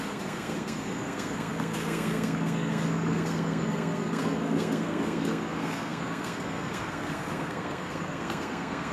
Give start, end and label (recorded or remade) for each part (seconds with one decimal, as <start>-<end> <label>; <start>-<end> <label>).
0.0-8.9 remade